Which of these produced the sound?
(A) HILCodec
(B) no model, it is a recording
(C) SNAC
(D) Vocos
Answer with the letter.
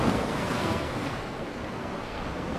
C